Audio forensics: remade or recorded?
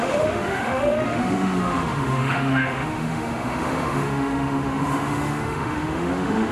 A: remade